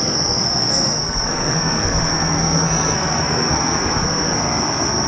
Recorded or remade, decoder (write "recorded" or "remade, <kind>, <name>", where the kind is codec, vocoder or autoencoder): remade, codec, SNAC